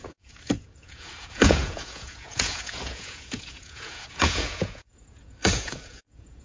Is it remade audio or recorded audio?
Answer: remade